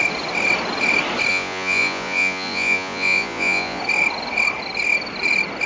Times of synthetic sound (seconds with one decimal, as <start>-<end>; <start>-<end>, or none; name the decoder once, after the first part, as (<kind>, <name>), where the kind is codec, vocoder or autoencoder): 1.3-3.8 (vocoder, Vocos)